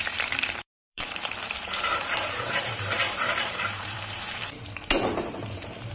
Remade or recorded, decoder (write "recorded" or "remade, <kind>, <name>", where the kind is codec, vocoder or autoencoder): remade, vocoder, BigVGAN v2